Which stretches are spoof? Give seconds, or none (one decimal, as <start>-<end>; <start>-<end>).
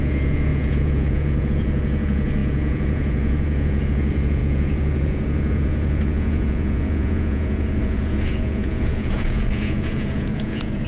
0.0-10.9